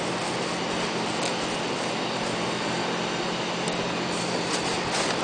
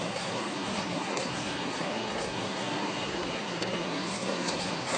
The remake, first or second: second